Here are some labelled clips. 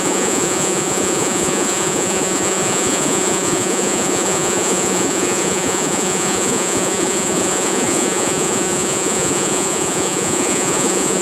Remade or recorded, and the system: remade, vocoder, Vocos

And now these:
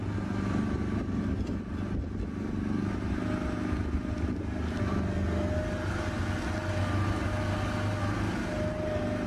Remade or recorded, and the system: recorded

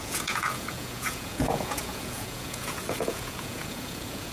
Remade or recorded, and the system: remade, vocoder, Vocos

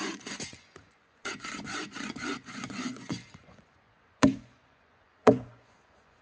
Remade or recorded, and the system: remade, vocoder, Vocos